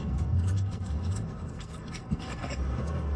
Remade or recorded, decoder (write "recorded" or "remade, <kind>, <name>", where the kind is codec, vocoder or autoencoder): remade, codec, SNAC